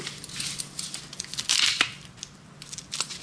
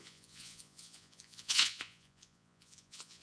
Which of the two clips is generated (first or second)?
second